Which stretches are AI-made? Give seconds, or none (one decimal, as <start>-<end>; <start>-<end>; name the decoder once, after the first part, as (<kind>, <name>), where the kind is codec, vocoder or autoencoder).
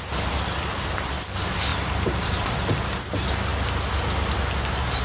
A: 1.7-2.5 (vocoder, BigVGAN v2)